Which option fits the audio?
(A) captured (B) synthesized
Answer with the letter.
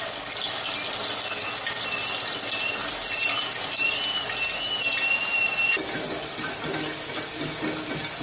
A